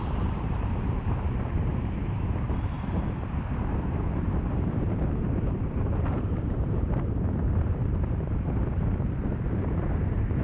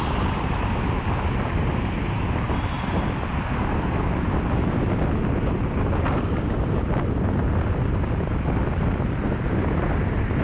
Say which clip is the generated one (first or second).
first